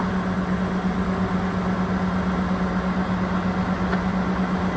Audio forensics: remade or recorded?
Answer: recorded